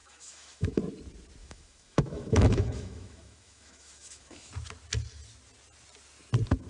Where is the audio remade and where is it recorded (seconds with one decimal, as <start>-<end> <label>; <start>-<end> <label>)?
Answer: 0.0-0.8 remade; 0.8-1.4 recorded; 1.4-4.5 remade; 4.5-6.7 recorded